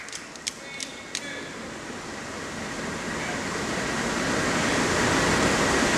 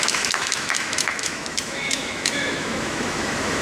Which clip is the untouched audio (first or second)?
first